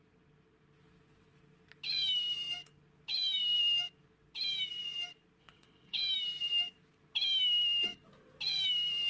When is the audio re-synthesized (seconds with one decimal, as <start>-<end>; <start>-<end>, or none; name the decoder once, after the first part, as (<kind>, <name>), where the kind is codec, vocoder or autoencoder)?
5.4-6.0 (vocoder, WaveNeXt)